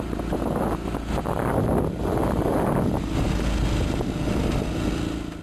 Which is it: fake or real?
real